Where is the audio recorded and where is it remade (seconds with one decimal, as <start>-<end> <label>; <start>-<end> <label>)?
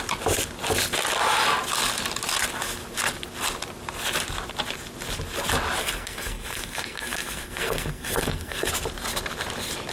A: 0.0-5.8 recorded; 5.8-8.7 remade; 8.7-9.9 recorded